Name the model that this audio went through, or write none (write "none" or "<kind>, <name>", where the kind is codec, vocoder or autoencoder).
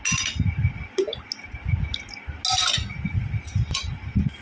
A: none